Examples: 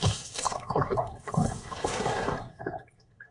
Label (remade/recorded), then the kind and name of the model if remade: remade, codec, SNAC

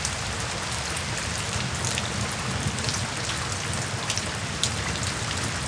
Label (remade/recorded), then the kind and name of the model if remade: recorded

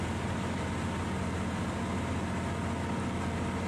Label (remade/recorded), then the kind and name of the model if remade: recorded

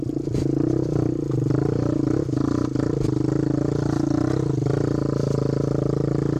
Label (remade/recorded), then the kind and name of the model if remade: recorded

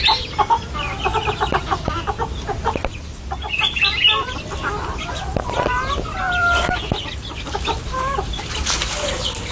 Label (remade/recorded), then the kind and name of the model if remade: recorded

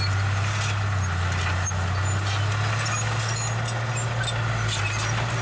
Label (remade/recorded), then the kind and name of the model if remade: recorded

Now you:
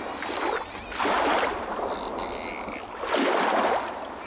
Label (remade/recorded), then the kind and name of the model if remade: recorded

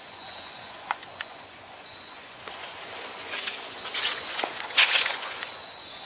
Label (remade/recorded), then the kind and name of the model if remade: remade, vocoder, Vocos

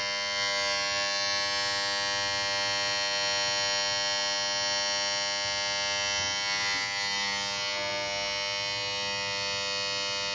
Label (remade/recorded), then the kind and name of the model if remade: recorded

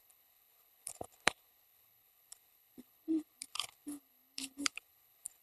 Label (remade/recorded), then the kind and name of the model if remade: remade, codec, HILCodec